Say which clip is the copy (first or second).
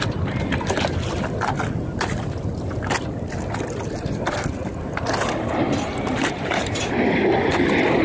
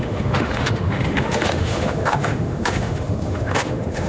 second